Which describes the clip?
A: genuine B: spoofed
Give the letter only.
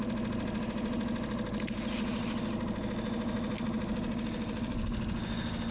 A